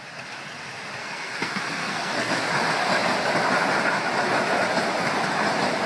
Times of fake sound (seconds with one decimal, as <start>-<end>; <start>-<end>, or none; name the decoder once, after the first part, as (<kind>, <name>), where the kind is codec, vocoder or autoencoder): 1.0-2.5 (codec, SNAC)